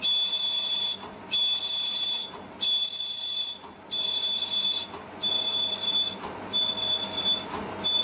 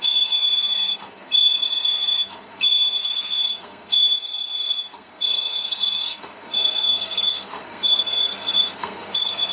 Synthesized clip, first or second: second